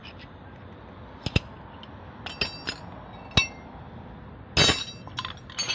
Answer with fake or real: real